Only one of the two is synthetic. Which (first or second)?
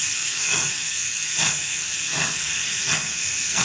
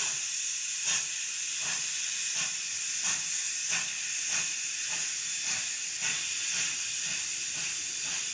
first